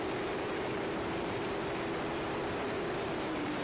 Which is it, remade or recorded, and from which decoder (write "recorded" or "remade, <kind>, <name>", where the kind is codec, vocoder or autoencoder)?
remade, vocoder, BigVGAN v2